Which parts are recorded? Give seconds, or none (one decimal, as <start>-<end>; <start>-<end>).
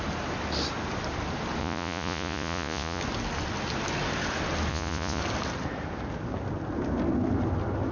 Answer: 0.0-1.6; 3.0-4.7; 5.2-7.9